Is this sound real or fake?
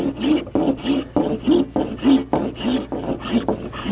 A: real